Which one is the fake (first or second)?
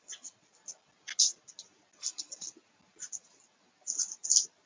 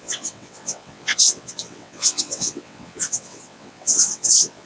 second